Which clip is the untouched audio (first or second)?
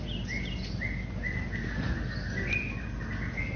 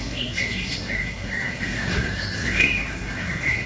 first